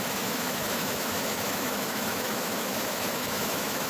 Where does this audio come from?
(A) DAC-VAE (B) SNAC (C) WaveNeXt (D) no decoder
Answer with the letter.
A